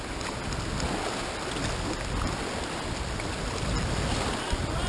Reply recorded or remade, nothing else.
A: recorded